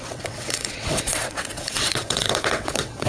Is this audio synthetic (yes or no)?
yes